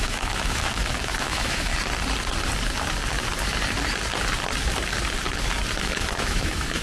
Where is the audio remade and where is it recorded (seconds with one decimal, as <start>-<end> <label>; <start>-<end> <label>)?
0.0-1.7 remade; 1.7-5.8 recorded; 5.8-6.8 remade